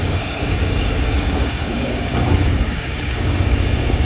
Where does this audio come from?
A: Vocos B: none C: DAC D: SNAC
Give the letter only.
C